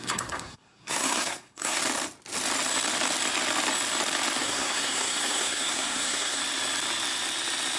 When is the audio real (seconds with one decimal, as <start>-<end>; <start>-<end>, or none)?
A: 1.8-4.4; 6.4-7.8